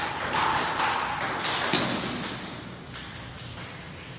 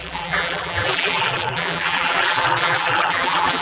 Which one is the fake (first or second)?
second